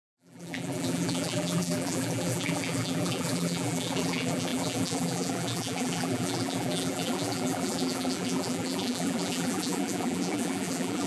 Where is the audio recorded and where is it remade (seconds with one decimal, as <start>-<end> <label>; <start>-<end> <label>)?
0.0-11.1 remade